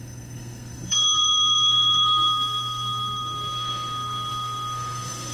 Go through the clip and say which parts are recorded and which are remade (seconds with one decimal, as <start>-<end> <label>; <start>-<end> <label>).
0.0-5.3 remade